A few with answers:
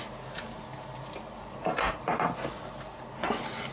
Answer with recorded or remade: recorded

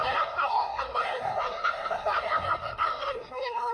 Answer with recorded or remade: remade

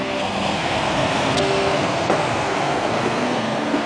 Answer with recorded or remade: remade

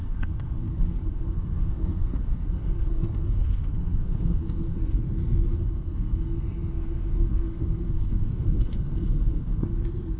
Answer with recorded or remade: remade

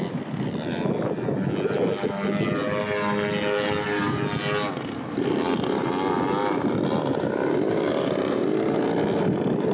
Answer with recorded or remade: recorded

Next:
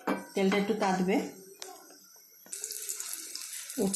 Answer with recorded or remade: recorded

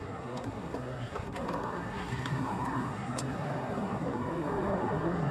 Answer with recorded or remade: remade